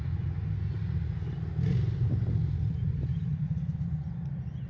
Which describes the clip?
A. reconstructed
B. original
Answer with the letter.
B